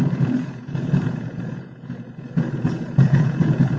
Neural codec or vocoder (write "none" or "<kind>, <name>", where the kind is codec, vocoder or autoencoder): vocoder, Vocos